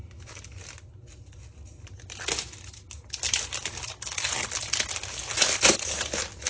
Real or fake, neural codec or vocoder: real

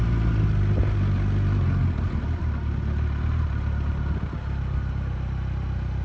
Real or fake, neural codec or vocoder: real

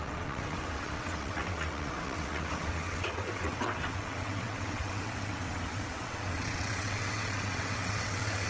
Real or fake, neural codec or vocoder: fake, vocoder, WaveNeXt